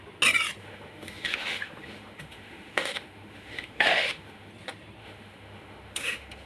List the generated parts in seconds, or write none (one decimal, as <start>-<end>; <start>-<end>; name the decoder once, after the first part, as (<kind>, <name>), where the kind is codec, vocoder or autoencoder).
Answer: 0.6-4.5 (autoencoder, DAC-VAE); 5.0-6.5